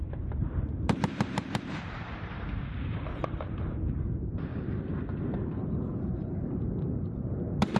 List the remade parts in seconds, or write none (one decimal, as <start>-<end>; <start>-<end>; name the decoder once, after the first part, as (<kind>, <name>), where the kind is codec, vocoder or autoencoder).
0.0-4.5 (vocoder, BigVGAN v2); 6.0-7.8

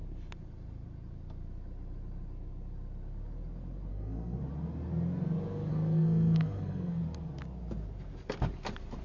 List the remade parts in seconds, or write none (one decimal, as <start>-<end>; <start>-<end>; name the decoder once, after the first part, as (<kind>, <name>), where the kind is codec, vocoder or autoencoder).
3.9-4.4 (codec, SNAC); 5.7-7.0

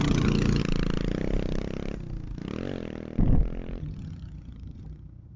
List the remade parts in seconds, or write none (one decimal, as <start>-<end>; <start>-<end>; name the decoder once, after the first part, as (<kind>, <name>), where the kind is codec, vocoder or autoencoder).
0.0-0.6 (vocoder, HiFi-GAN); 3.8-5.4

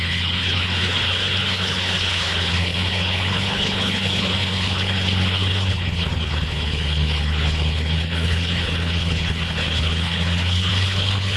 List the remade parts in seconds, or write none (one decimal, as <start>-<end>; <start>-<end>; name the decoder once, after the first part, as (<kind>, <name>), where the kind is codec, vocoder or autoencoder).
0.0-11.4 (codec, HILCodec)

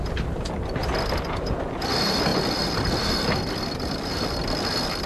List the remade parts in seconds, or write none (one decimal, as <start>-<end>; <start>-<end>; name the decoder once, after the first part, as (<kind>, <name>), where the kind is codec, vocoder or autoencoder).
none